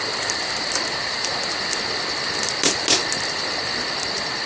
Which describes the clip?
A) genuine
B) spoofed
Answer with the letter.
A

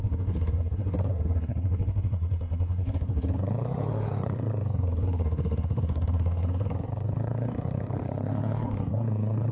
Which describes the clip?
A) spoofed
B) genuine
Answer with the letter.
A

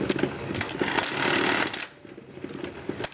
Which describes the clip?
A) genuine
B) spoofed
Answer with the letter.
A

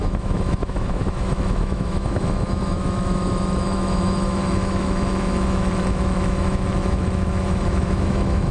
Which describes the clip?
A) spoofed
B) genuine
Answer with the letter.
A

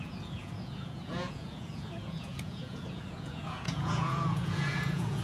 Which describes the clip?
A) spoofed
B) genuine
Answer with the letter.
A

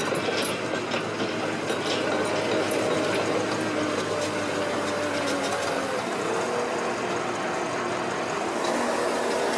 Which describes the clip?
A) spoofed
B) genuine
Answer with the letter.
B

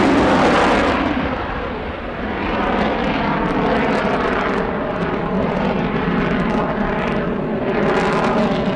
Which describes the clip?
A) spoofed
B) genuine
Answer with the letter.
B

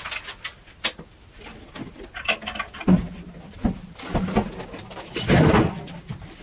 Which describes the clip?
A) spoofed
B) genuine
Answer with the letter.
B